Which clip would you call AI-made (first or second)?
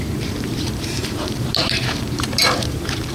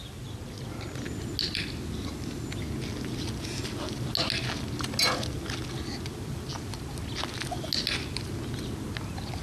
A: first